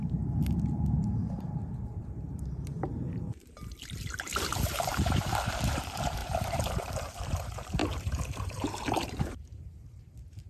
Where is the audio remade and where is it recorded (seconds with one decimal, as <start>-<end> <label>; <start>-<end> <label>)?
0.0-10.5 remade